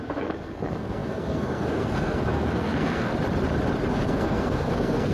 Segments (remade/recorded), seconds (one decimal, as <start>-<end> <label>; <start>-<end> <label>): 0.0-3.1 remade; 3.1-3.9 recorded; 3.9-5.1 remade